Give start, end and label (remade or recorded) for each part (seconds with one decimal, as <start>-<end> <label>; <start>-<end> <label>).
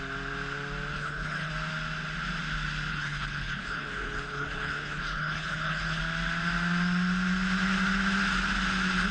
0.0-0.9 recorded; 0.9-1.5 remade; 1.5-2.9 recorded; 2.9-6.0 remade; 6.0-9.1 recorded